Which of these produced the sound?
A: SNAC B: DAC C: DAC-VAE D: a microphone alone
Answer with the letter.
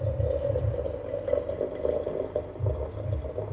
D